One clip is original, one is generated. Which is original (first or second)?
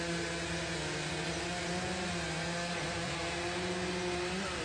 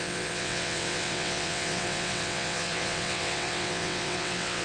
first